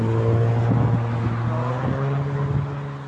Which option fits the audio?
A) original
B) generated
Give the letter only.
A